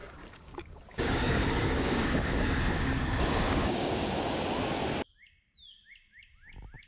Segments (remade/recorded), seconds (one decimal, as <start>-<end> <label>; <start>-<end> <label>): 0.0-4.1 remade; 4.1-6.9 recorded